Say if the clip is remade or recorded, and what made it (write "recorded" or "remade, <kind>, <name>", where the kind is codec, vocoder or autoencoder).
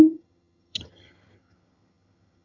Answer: remade, vocoder, HiFi-GAN